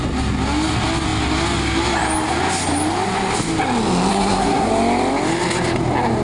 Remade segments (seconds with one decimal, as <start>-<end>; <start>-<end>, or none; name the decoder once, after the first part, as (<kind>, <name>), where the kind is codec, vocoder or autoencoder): 4.1-4.7 (codec, SNAC)